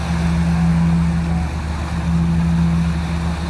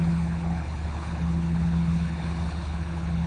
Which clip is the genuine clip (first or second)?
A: first